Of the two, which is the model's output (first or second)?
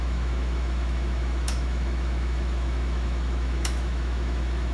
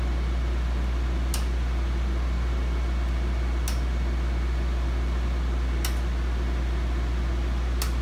first